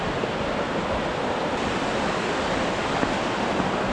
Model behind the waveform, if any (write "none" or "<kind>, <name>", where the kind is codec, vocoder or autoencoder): none